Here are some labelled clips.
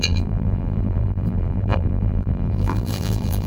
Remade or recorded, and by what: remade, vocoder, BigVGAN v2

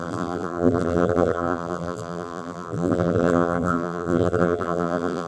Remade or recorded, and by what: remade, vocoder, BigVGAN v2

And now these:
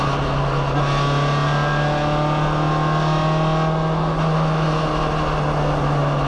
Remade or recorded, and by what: recorded